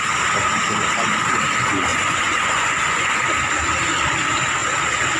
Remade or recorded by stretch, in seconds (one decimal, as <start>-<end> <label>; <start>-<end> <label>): 0.0-1.9 recorded; 1.9-3.2 remade; 3.2-5.2 recorded